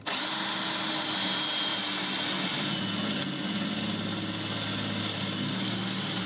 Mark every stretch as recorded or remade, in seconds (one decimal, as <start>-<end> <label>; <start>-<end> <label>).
0.0-6.3 recorded